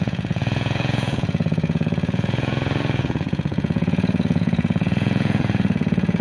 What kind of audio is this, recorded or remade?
remade